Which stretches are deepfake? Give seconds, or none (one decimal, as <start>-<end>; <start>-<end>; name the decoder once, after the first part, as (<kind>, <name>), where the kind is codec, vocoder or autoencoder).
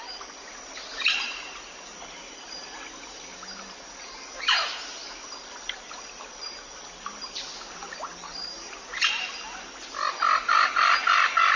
none